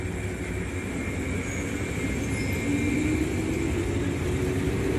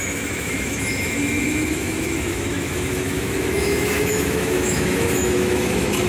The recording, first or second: first